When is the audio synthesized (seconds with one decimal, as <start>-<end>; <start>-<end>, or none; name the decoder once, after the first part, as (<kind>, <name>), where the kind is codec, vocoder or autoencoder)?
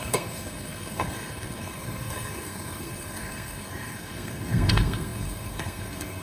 0.0-6.2 (codec, SNAC)